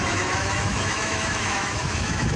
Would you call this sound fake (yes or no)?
yes